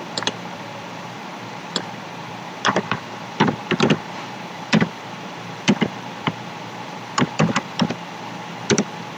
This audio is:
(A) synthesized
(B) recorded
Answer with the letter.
A